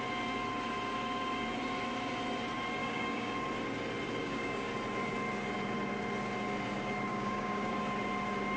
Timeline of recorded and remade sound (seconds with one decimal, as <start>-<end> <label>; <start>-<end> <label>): 0.0-2.8 recorded; 2.8-3.3 remade; 3.3-4.2 recorded; 4.2-4.7 remade; 4.7-7.1 recorded; 7.1-7.7 remade; 7.7-8.6 recorded